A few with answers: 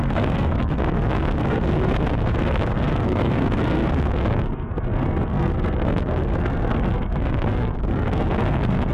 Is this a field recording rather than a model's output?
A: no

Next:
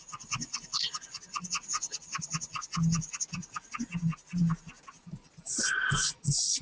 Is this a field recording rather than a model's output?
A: yes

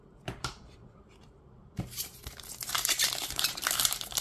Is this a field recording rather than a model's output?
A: no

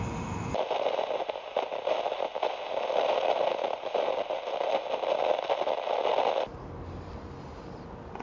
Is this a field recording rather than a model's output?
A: yes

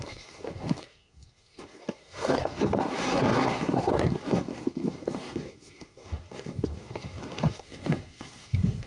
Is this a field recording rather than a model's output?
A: no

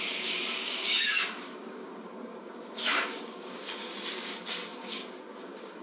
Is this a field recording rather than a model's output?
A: no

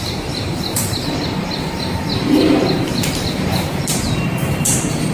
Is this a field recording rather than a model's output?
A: no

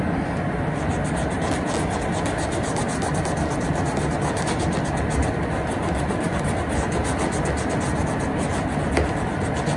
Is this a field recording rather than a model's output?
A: yes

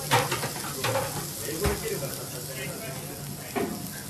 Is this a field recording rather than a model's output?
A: yes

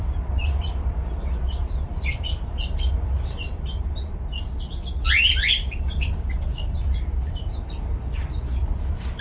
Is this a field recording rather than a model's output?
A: no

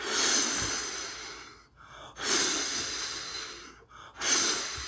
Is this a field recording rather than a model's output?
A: yes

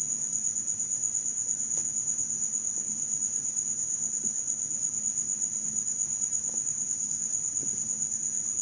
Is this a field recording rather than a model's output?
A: yes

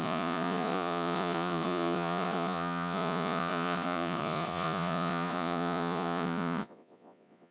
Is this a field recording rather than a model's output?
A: no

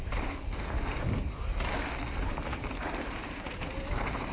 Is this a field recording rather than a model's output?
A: yes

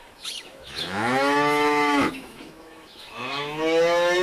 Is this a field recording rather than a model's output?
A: no